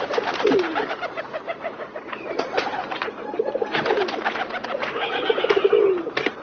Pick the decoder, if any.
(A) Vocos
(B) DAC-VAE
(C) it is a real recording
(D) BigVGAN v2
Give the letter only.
D